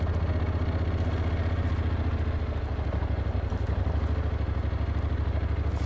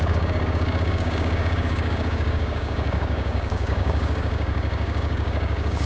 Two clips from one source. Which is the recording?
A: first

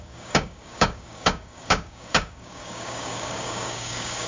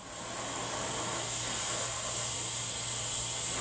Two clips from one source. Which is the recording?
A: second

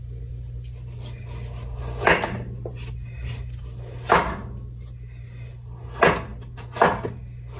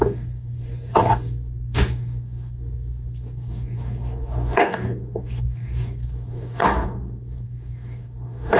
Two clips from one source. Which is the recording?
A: first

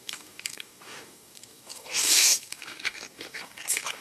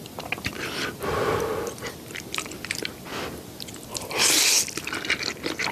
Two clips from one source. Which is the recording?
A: second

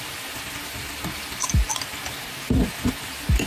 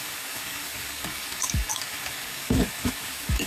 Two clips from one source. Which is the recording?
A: first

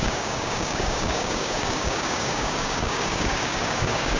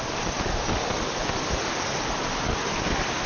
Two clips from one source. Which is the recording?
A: second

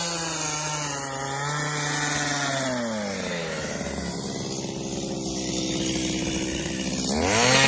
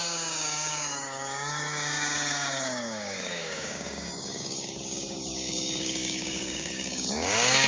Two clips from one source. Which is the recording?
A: first